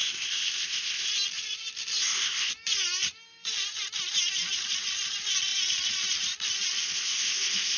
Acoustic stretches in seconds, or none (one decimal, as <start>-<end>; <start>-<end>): 1.1-2.0; 2.5-6.8